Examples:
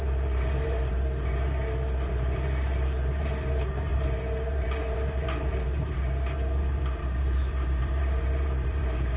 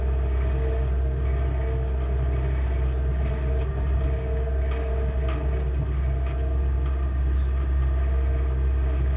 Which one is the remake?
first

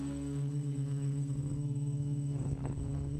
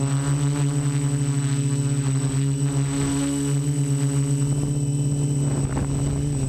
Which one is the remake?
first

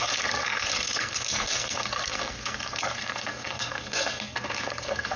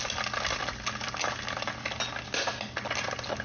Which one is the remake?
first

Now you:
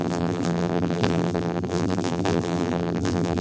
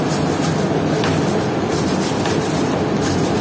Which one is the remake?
first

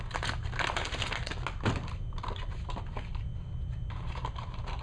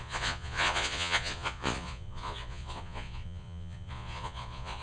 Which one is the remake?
second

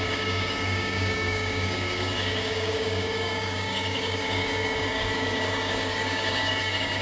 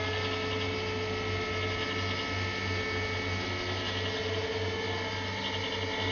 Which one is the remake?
first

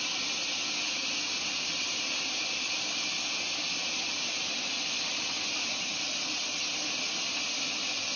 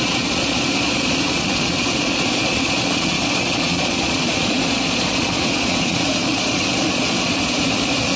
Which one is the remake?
second